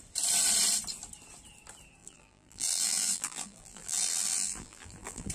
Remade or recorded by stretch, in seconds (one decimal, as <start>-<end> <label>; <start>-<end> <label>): 0.0-2.0 recorded; 2.0-5.3 remade